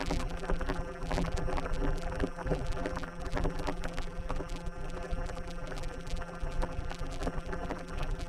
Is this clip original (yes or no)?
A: no